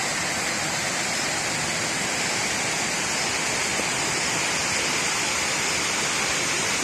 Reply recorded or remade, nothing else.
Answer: recorded